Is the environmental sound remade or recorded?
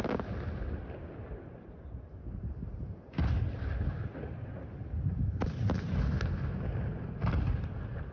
recorded